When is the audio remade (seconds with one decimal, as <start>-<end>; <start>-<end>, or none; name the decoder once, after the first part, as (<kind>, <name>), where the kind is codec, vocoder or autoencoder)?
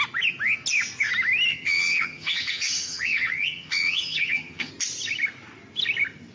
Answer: 1.5-4.7 (vocoder, HiFi-GAN)